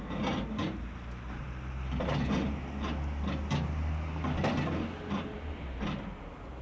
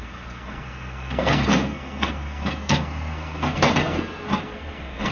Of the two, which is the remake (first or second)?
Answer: second